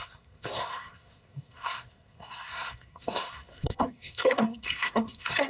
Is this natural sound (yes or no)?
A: no